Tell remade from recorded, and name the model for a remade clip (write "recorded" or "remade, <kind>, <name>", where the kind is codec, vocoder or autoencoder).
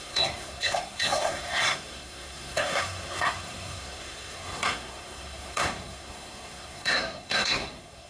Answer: remade, codec, SNAC